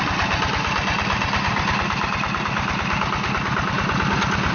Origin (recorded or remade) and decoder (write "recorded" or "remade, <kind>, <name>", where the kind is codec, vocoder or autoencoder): recorded